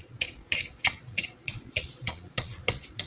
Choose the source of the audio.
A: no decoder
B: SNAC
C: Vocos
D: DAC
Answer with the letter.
C